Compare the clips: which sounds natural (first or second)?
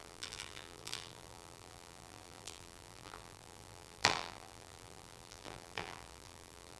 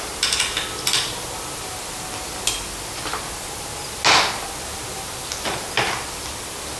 second